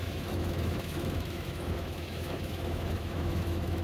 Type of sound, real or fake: fake